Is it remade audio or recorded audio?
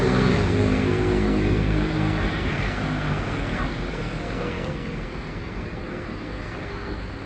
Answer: remade